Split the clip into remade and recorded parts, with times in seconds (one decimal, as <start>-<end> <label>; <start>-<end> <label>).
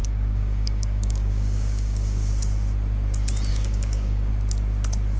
0.0-2.3 remade; 2.3-3.5 recorded; 3.5-4.3 remade; 4.3-5.2 recorded